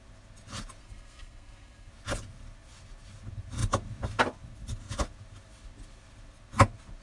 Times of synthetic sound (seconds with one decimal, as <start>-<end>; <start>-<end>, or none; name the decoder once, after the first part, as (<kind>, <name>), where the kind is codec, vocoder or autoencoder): 0.8-1.9 (codec, SNAC)